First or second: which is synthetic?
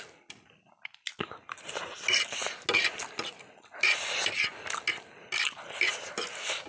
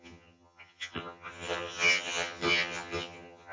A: second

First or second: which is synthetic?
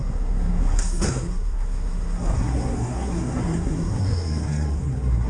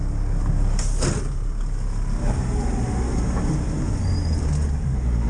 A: first